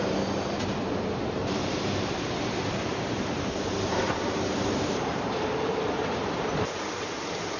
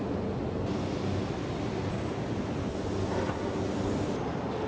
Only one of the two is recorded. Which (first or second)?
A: second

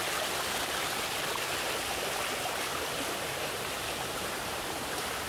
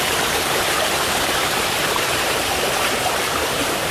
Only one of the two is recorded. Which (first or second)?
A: first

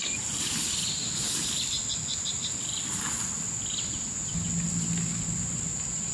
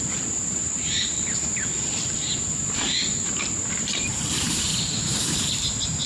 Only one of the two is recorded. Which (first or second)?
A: first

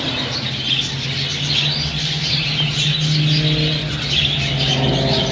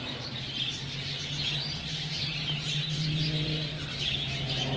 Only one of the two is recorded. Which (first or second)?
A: first